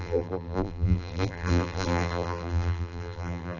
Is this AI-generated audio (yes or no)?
yes